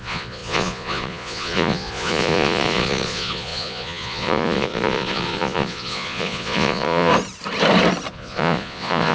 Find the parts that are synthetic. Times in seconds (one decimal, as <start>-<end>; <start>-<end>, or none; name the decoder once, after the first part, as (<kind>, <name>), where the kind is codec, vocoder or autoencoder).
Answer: 0.0-7.1 (vocoder, Vocos); 8.1-9.1